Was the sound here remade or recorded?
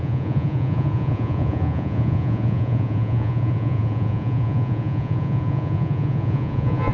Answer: remade